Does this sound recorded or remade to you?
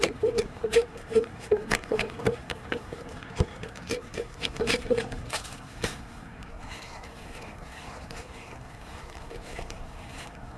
remade